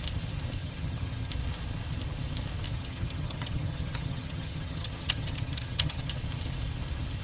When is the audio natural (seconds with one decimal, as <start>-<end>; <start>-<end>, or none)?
0.0-0.6; 1.3-2.7; 6.1-7.2